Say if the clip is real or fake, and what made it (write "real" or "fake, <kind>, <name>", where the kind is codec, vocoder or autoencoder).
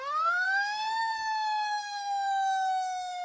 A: fake, codec, SNAC